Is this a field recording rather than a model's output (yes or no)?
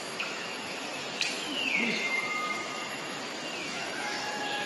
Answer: no